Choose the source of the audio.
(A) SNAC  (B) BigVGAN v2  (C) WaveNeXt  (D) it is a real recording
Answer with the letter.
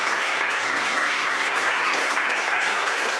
A